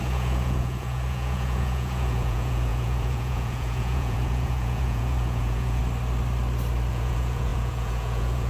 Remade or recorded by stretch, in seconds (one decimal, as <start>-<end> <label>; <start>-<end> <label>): 0.0-5.8 remade; 5.8-6.9 recorded; 6.9-8.5 remade